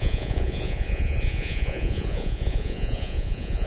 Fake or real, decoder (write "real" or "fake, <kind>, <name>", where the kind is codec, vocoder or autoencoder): fake, vocoder, Vocos